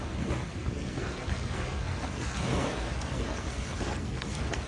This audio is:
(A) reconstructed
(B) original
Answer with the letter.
A